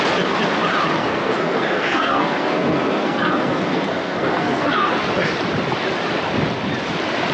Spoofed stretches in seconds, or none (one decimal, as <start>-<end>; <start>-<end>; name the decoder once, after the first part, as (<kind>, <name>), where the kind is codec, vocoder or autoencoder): 1.0-5.0 (codec, SNAC)